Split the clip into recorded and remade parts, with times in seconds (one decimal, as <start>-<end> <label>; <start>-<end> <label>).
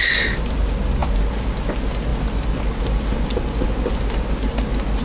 0.0-5.0 recorded